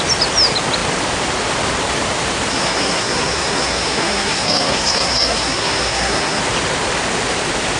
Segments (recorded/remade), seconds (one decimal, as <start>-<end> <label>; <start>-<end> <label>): 0.0-2.5 recorded; 2.5-6.4 remade; 6.4-7.8 recorded